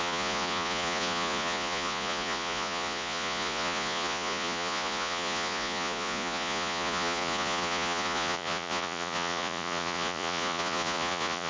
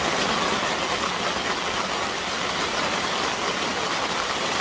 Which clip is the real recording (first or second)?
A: second